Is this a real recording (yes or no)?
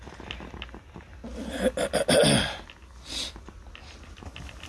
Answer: yes